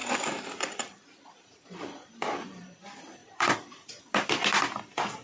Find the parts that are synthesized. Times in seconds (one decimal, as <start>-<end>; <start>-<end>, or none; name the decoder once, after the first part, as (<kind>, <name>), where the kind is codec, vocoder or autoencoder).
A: 3.2-4.0 (vocoder, BigVGAN v2)